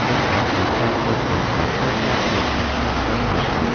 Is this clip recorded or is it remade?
recorded